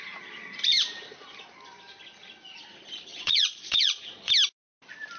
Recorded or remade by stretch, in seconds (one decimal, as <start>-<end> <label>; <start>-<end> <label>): 0.0-3.1 recorded; 3.1-4.3 remade; 4.3-5.2 recorded